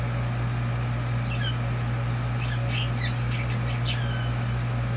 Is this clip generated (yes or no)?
no